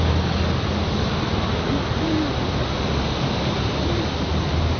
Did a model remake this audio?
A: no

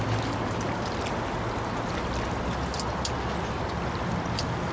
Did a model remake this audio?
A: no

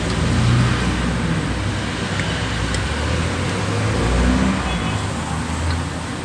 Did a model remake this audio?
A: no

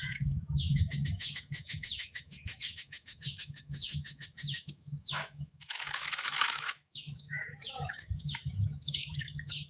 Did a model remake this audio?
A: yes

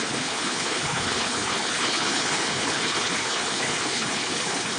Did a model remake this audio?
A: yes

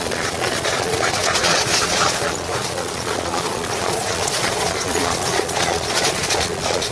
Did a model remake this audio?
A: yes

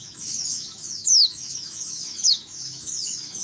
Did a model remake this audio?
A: yes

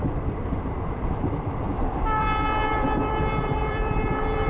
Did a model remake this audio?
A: yes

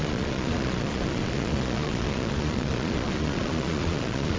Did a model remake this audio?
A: yes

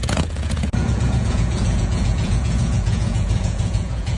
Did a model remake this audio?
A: yes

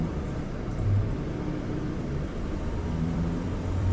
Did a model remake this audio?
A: yes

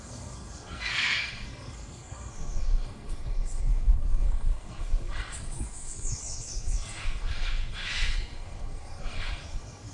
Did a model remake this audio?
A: yes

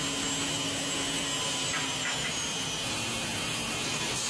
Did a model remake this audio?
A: no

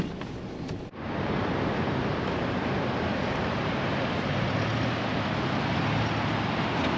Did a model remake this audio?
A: no